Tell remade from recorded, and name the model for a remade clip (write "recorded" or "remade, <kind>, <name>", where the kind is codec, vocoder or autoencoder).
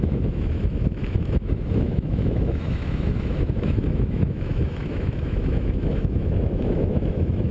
remade, autoencoder, DAC-VAE